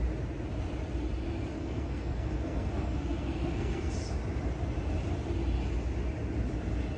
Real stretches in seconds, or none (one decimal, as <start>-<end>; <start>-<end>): 0.0-1.5; 3.9-7.0